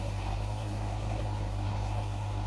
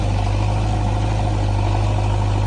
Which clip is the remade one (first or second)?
first